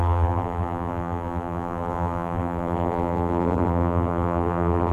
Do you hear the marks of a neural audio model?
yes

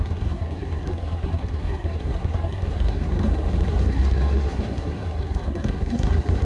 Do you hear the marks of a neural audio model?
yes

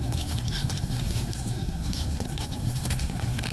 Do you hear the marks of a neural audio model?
yes